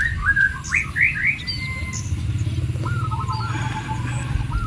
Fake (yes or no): no